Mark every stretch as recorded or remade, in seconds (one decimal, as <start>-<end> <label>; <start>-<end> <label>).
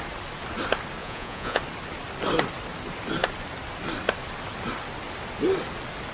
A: 0.0-1.0 recorded; 1.0-1.6 remade; 1.6-6.1 recorded